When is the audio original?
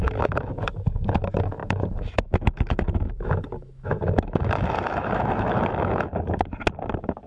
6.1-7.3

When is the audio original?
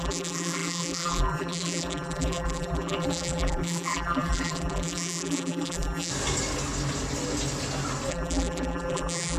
6.1-8.1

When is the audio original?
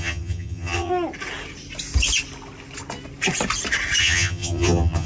0.9-4.0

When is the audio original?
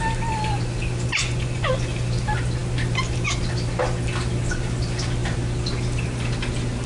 0.0-1.2; 1.7-6.9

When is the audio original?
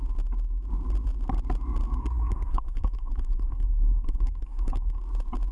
0.0-2.0; 5.0-5.5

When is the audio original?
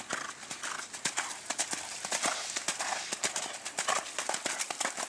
0.0-5.1